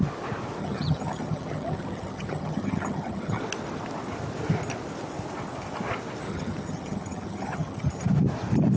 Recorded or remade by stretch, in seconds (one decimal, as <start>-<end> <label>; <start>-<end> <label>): 0.0-0.6 recorded; 0.6-3.4 remade; 3.4-6.3 recorded; 6.3-8.0 remade; 8.0-8.8 recorded